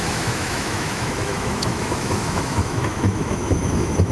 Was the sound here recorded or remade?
remade